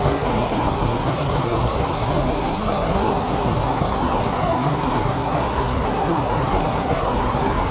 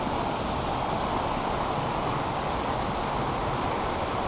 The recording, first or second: second